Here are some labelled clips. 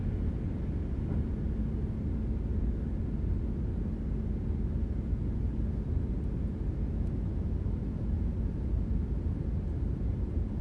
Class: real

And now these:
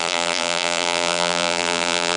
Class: fake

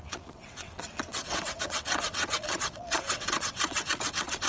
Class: fake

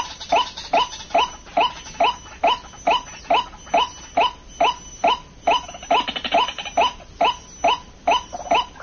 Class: real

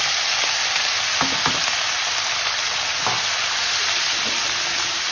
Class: real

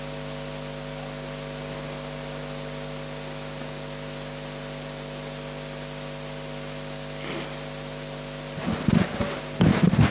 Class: real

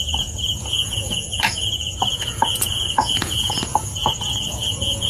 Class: fake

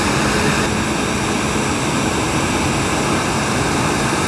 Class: real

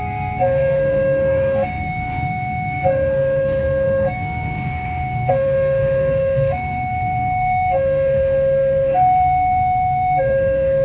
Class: fake